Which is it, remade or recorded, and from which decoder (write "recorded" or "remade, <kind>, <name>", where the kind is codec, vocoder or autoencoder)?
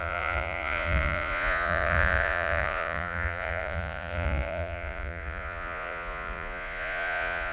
remade, vocoder, Vocos